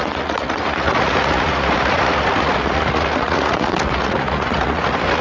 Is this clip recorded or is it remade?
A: remade